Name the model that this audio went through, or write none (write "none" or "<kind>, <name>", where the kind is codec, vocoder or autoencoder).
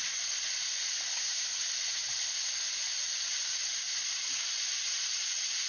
none